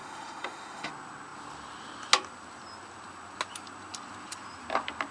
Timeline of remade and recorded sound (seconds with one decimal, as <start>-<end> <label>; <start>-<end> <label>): 0.0-0.9 remade; 0.9-5.1 recorded